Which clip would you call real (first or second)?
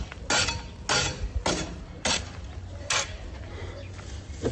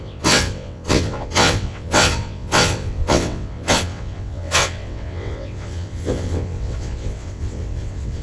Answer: first